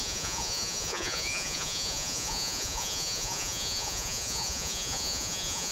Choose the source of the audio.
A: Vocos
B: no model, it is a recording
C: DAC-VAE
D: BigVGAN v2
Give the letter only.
A